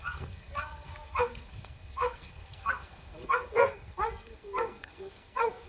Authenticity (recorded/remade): remade